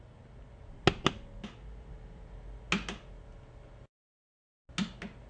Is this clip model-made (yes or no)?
no